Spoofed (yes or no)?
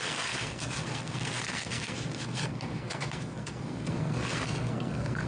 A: yes